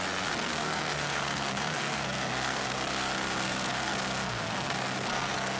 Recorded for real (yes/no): no